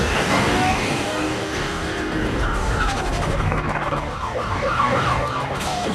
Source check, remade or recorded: remade